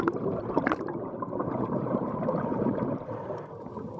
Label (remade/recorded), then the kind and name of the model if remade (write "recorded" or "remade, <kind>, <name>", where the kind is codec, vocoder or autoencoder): remade, vocoder, BigVGAN v2